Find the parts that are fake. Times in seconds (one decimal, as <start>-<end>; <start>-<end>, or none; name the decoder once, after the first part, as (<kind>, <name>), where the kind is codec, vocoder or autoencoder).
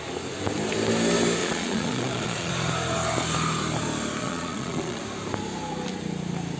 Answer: 1.4-2.5 (vocoder, Vocos); 4.2-5.0